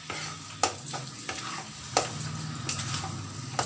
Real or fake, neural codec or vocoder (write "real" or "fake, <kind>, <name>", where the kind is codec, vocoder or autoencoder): real